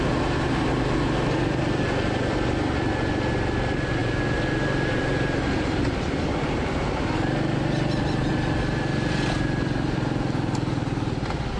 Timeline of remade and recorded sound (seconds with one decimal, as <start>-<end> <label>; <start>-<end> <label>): 0.0-11.6 recorded